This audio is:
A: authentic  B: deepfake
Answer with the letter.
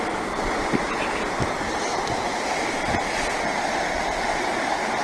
A